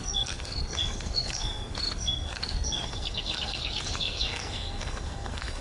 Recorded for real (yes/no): no